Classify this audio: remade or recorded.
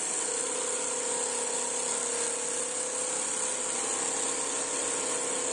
recorded